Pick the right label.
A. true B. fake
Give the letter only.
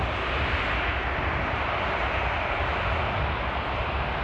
A